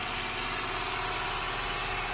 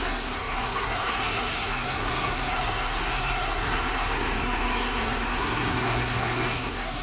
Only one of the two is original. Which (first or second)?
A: first